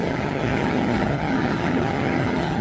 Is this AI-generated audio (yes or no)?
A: yes